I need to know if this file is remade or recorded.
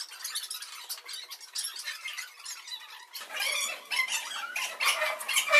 recorded